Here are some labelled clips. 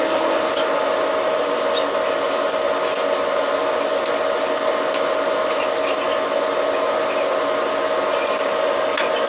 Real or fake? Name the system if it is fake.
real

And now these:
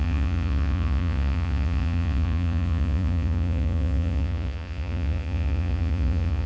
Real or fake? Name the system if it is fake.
fake, vocoder, Vocos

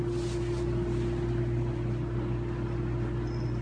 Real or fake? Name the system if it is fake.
real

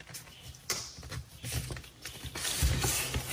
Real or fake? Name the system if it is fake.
real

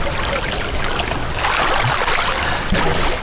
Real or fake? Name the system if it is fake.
real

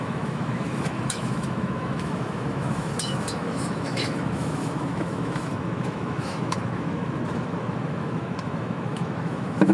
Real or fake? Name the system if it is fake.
fake, autoencoder, DAC-VAE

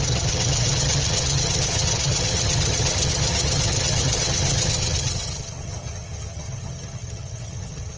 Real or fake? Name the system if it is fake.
fake, vocoder, HiFi-GAN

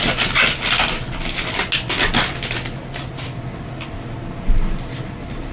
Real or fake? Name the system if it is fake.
real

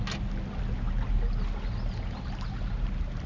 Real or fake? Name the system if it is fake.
real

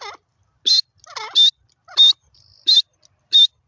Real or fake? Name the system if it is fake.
real